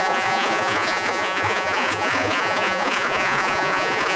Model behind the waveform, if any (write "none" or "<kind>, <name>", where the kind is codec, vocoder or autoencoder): vocoder, Vocos